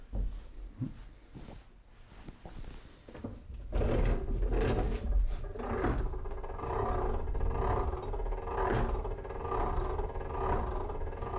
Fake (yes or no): no